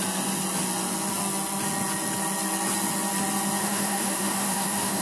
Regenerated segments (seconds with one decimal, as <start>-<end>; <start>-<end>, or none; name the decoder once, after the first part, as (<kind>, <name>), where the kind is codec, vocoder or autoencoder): 3.6-5.0 (autoencoder, DAC-VAE)